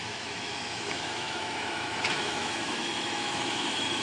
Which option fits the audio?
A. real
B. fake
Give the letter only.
B